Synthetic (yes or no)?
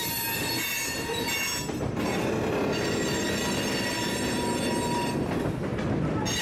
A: no